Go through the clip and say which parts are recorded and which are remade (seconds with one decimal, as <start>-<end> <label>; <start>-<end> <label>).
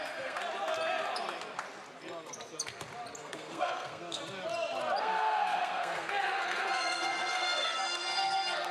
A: 0.0-0.4 remade; 0.4-3.2 recorded; 3.2-4.2 remade; 4.2-5.0 recorded; 5.0-8.7 remade